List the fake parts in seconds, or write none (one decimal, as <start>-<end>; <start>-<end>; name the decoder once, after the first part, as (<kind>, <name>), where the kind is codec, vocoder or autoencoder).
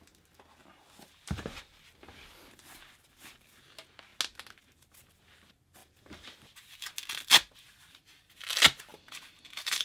0.6-2.1 (vocoder, BigVGAN v2); 5.8-6.9; 8.9-9.8